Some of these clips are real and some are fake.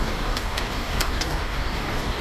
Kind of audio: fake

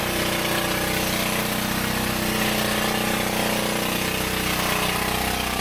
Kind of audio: real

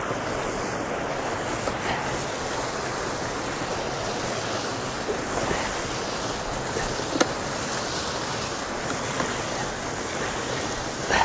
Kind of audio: real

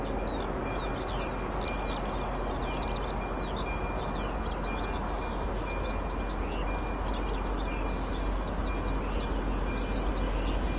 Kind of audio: real